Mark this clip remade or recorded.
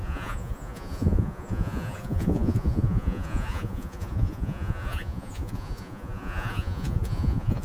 remade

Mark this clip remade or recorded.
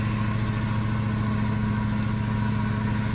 recorded